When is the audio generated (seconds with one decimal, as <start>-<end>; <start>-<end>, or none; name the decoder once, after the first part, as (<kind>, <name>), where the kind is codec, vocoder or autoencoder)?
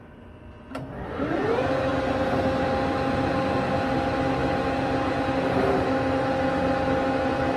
none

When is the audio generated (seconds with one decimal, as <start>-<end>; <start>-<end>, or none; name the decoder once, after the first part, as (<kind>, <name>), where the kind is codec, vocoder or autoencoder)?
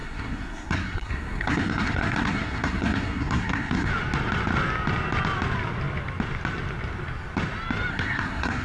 0.0-3.9 (codec, SNAC); 7.9-8.6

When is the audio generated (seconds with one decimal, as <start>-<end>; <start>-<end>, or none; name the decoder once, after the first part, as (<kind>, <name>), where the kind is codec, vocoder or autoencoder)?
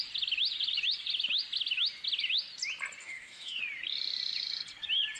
3.0-3.6 (codec, DAC)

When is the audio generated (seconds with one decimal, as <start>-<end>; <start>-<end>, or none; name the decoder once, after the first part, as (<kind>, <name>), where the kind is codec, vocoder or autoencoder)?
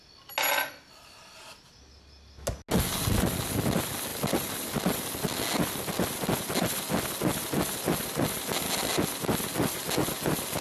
4.1-4.8 (vocoder, BigVGAN v2)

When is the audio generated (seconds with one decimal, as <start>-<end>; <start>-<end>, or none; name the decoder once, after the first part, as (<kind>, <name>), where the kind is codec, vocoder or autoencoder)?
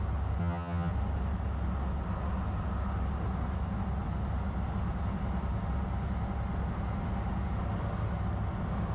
0.4-0.9 (vocoder, HiFi-GAN)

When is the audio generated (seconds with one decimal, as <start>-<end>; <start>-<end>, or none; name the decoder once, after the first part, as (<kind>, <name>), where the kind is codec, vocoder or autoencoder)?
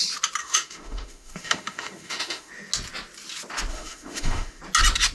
0.4-2.5 (autoencoder, DAC-VAE); 3.7-4.6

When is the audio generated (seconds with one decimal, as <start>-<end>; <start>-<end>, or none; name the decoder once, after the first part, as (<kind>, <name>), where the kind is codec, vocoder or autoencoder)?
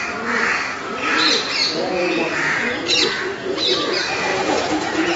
1.6-3.0 (vocoder, Vocos); 4.3-5.2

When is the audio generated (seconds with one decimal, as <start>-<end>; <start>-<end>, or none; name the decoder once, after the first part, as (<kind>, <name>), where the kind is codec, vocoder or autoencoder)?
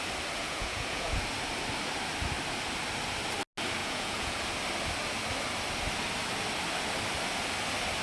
0.4-1.2 (vocoder, Vocos); 3.8-4.4